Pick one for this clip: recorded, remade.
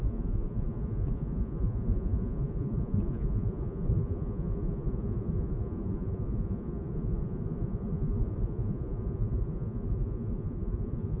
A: remade